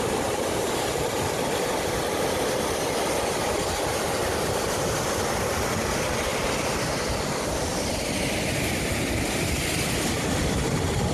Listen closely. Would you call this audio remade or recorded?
recorded